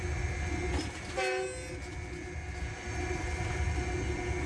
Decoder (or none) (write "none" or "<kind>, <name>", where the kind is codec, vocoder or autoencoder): none